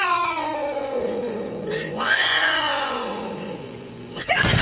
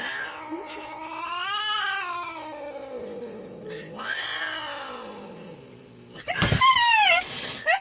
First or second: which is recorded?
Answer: second